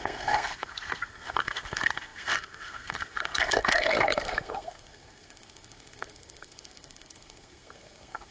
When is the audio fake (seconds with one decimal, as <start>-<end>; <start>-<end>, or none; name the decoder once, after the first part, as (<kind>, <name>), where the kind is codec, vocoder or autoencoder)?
0.0-8.3 (codec, SNAC)